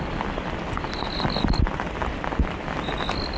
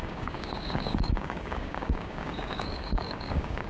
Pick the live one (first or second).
first